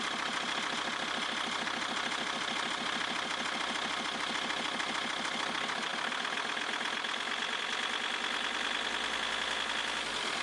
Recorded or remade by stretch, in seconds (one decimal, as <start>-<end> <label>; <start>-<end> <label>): 0.0-10.4 recorded